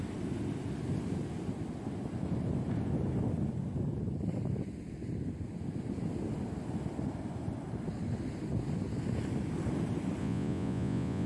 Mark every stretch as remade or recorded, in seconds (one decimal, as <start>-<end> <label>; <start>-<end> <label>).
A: 0.0-10.2 recorded; 10.2-11.3 remade